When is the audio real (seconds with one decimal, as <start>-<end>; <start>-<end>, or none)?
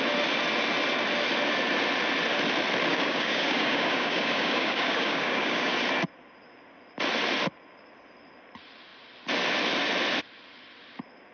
0.0-2.9; 5.7-11.3